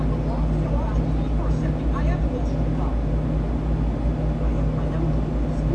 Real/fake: real